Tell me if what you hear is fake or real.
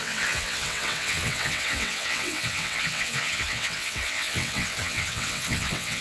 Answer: fake